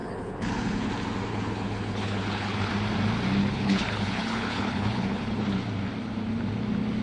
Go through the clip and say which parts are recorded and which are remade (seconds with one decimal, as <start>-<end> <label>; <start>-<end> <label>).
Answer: 0.0-0.9 remade; 0.9-1.3 recorded; 1.3-2.7 remade; 2.7-3.4 recorded; 3.4-5.4 remade; 5.4-7.0 recorded